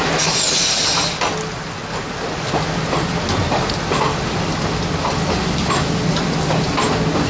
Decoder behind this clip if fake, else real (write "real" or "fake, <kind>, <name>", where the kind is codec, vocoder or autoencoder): real